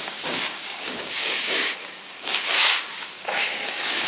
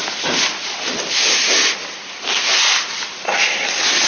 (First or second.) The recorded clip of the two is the second